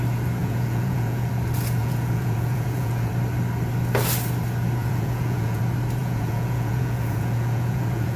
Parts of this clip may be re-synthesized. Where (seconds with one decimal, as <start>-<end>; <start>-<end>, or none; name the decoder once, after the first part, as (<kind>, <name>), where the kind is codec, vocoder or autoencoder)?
0.4-1.3 (vocoder, Vocos); 1.8-3.1; 4.8-5.6; 6.0-8.2